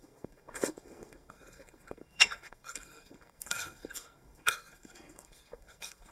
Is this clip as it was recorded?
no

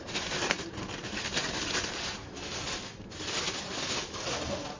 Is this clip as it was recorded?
yes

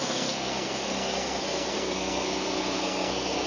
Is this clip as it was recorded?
no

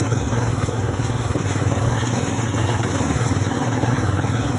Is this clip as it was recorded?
no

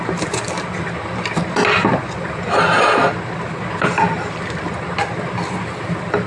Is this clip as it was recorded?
yes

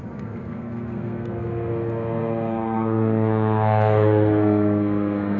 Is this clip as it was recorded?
no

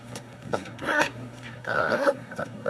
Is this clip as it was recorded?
no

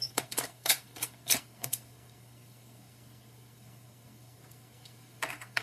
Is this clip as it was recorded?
no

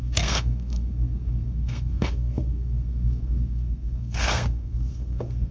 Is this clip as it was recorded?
no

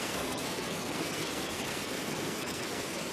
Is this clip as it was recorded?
no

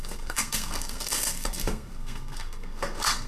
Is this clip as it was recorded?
no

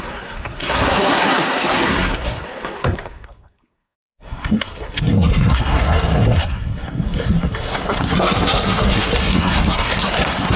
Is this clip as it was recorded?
no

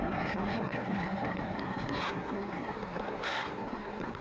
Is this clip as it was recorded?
no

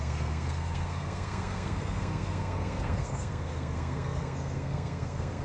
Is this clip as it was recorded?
no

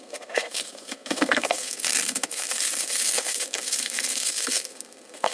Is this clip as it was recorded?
no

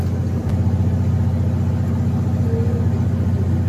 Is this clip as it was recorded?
yes